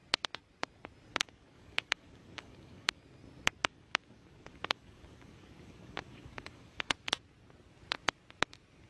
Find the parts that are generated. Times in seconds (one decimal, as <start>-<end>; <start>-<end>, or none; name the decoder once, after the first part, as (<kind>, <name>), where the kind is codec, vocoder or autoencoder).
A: 1.1-3.0 (codec, DAC); 3.6-6.9